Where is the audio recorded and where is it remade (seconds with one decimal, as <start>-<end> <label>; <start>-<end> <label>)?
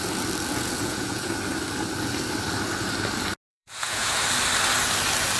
0.0-0.5 recorded; 0.5-1.3 remade; 1.3-3.5 recorded; 3.5-4.2 remade; 4.2-5.4 recorded